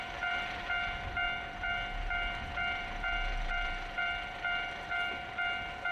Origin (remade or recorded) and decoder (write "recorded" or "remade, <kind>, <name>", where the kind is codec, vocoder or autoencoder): remade, vocoder, BigVGAN v2